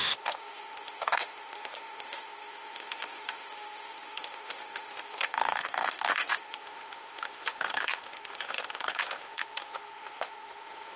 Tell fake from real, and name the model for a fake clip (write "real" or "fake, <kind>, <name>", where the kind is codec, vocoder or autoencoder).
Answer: fake, autoencoder, DAC-VAE